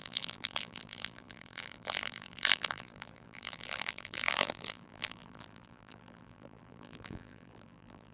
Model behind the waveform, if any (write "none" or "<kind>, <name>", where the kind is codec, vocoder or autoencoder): vocoder, BigVGAN v2